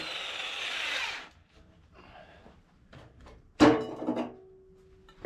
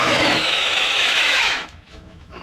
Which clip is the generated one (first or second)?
second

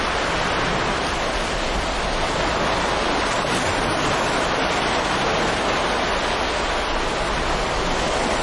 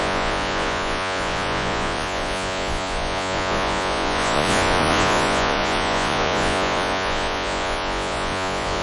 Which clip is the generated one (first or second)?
second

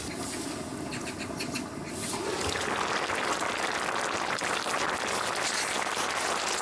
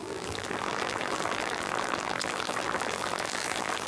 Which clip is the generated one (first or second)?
second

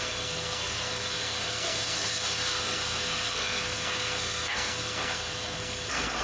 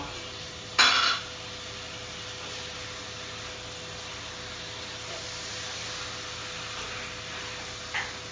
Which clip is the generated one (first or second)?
first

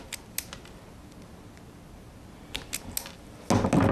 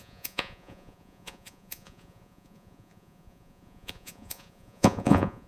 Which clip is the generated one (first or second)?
second